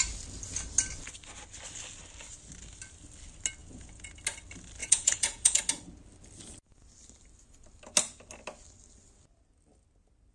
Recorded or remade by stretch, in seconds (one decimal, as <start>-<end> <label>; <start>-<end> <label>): 0.0-3.6 recorded; 3.6-4.2 remade; 4.2-4.8 recorded; 4.8-5.6 remade; 5.6-10.3 recorded